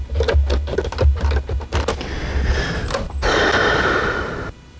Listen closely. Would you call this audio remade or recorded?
recorded